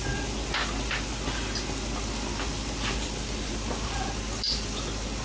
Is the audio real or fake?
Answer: real